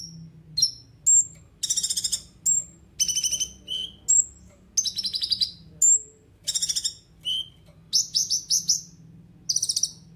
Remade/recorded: recorded